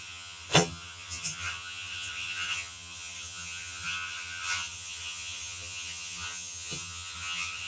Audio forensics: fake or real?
fake